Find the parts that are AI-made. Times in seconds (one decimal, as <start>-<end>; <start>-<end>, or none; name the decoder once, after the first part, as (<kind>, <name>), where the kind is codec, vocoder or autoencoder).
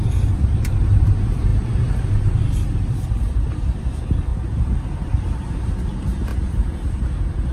0.0-6.3 (vocoder, BigVGAN v2); 6.9-7.5